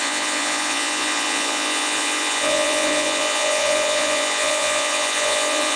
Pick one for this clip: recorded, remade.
remade